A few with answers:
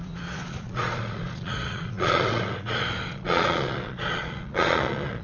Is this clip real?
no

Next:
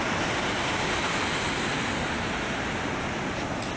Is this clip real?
yes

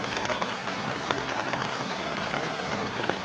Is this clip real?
no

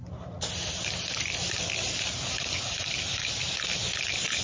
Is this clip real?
yes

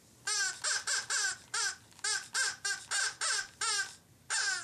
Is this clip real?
yes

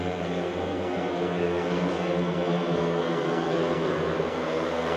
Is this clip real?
no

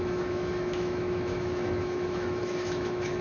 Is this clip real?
no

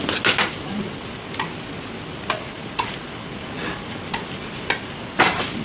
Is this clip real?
yes